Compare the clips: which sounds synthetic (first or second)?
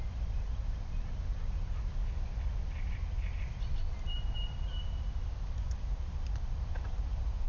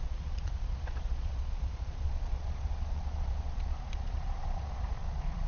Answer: second